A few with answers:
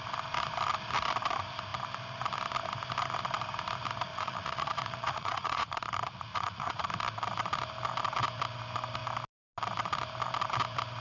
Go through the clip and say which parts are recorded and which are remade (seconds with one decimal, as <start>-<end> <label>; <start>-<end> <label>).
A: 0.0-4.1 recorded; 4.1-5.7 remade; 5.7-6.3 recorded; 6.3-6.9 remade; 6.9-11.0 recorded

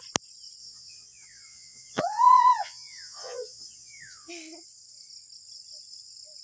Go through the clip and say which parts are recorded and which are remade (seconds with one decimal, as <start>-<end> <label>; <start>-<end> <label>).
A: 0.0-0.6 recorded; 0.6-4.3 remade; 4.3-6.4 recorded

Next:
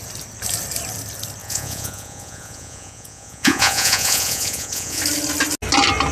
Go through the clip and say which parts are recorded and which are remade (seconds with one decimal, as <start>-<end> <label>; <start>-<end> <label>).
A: 0.0-1.4 recorded; 1.4-5.0 remade; 5.0-6.1 recorded